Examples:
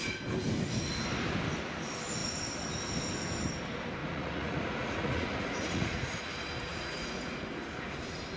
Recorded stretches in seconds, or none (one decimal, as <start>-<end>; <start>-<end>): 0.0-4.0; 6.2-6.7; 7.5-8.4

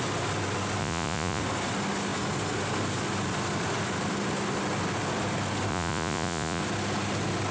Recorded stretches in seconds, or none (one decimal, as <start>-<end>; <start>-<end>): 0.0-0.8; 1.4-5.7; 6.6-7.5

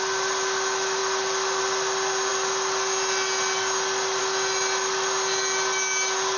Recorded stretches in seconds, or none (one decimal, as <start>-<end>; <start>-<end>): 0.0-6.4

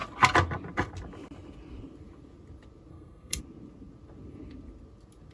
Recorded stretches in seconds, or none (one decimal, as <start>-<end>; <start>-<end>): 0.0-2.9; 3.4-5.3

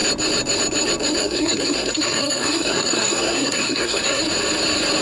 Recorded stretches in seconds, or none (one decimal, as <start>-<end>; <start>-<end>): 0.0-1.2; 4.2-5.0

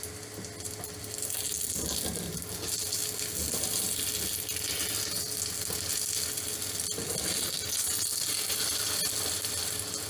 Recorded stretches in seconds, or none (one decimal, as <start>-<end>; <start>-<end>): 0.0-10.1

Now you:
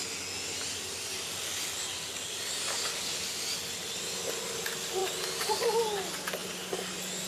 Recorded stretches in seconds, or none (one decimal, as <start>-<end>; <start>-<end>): 0.0-7.3